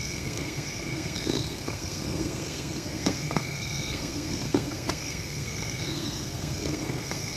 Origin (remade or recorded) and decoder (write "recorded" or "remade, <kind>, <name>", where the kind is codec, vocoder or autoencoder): remade, codec, SNAC